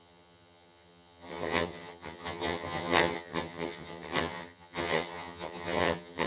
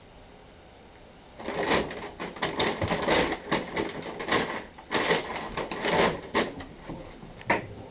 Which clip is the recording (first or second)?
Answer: second